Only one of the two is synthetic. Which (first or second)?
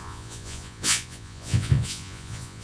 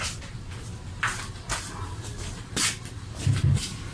first